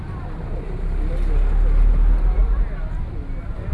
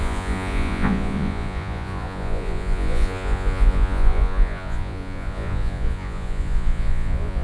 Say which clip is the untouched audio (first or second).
first